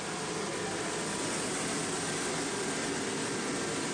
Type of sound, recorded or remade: recorded